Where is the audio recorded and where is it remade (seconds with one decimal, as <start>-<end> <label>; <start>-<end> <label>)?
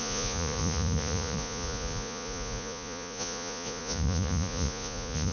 0.0-5.3 remade